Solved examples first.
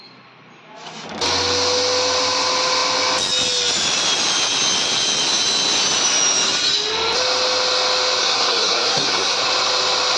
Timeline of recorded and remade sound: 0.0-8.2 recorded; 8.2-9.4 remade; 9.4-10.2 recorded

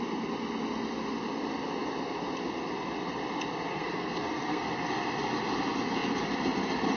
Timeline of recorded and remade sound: 0.0-3.7 recorded; 3.7-4.7 remade; 4.7-7.0 recorded

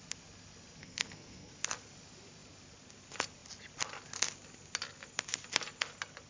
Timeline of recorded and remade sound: 0.0-0.8 recorded; 0.8-1.5 remade; 1.5-6.3 recorded

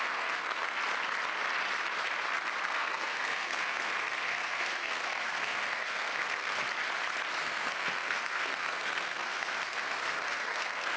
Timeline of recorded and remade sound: 0.0-0.8 remade; 0.8-2.6 recorded; 2.6-6.6 remade; 6.6-7.4 recorded; 7.4-11.0 remade

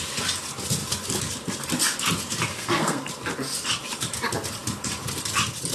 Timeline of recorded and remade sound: 0.0-2.5 recorded; 2.5-3.1 remade; 3.1-5.7 recorded

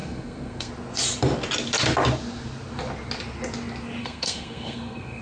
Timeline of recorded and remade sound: 0.0-0.7 remade; 0.7-4.0 recorded; 4.0-5.2 remade